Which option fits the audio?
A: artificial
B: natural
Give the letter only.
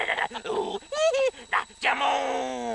B